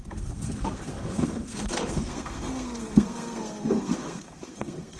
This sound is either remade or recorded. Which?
remade